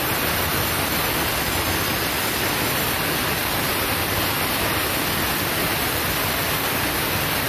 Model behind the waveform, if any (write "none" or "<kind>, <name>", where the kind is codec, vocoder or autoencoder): none